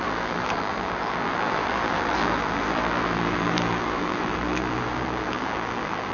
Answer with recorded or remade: remade